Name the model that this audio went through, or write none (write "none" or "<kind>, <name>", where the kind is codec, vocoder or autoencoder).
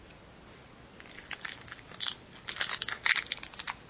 none